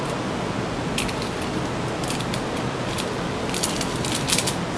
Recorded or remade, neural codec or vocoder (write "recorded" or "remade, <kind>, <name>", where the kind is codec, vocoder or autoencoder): recorded